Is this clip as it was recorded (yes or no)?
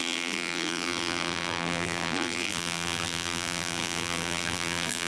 no